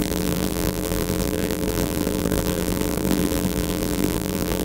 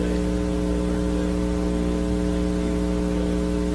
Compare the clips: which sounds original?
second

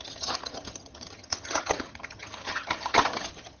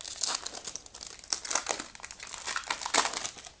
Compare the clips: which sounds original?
second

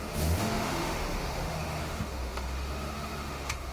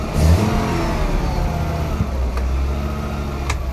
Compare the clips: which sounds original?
second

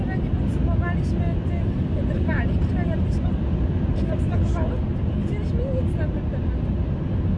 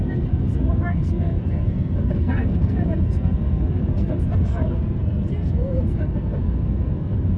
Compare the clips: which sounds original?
first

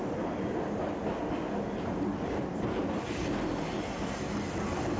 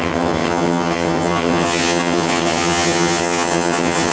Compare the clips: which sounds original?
first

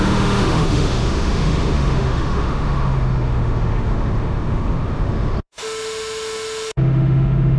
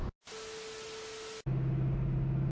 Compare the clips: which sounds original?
second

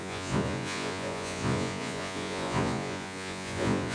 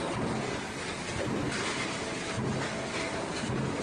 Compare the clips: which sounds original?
second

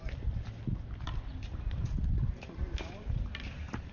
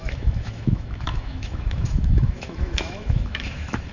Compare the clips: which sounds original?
first